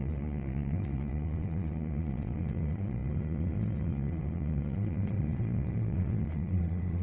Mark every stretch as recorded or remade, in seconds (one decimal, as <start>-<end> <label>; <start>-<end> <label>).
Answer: 0.0-7.0 remade